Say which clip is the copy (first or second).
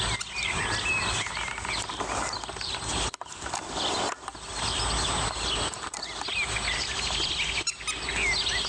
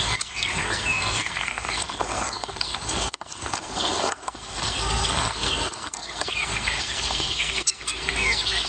second